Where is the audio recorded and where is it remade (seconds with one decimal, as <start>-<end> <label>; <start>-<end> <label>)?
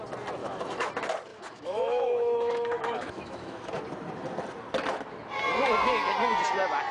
0.0-0.4 recorded; 0.4-0.9 remade; 0.9-1.3 recorded; 1.3-3.7 remade; 3.7-6.9 recorded